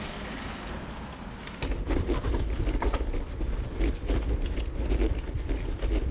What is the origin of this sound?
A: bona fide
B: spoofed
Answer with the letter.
A